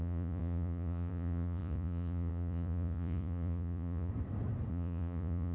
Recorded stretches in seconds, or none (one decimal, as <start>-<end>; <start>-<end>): 4.1-4.7